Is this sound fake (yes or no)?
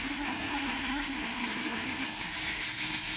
yes